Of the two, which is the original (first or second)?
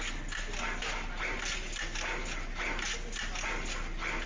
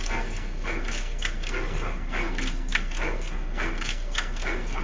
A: first